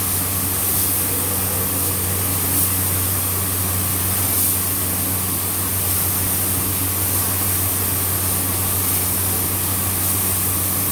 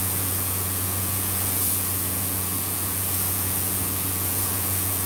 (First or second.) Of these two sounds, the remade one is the second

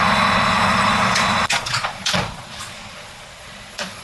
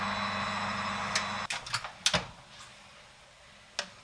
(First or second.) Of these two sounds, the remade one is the first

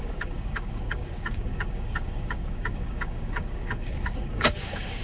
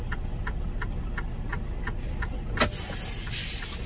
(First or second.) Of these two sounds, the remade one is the first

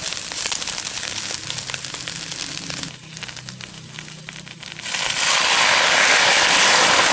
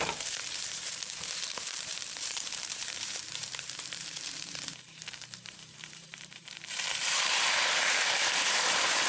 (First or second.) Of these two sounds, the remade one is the second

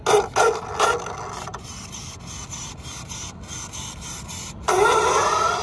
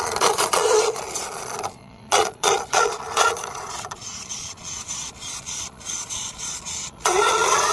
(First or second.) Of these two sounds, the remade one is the second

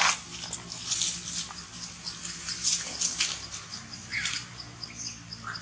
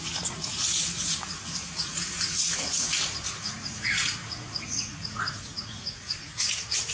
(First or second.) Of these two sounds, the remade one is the second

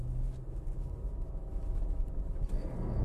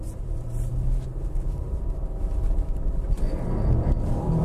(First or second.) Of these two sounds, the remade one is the second